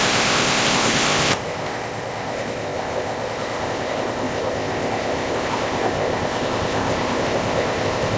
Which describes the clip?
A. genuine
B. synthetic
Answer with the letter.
B